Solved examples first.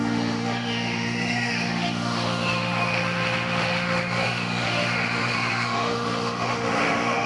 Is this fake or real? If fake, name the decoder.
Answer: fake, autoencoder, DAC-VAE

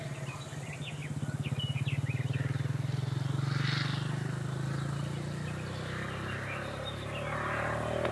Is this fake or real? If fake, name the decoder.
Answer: real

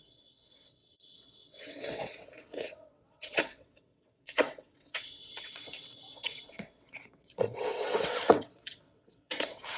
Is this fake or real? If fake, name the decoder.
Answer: fake, vocoder, WaveNeXt